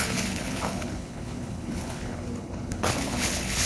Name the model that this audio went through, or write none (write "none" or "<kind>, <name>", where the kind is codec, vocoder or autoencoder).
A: codec, HILCodec